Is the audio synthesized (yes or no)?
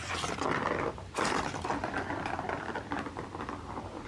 no